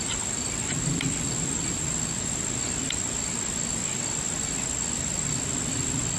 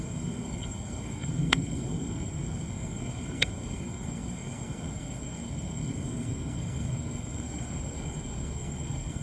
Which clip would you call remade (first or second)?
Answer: second